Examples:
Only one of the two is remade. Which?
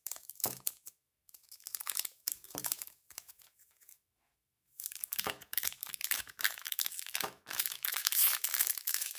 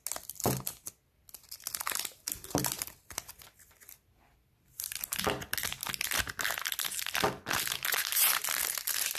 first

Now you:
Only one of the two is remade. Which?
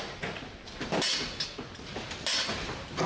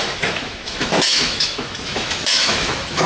second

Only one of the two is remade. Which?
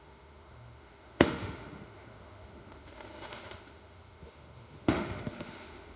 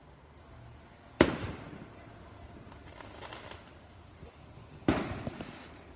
first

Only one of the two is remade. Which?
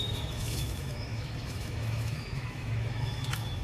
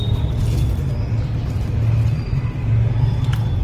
first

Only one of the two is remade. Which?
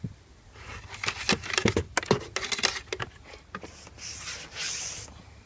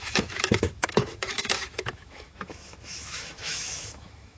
second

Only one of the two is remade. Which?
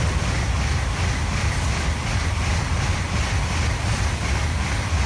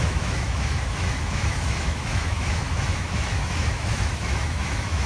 second